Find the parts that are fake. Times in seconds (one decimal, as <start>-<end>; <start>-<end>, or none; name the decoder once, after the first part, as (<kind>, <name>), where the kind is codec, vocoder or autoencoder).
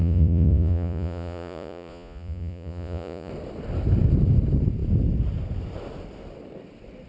0.0-3.3 (vocoder, Vocos)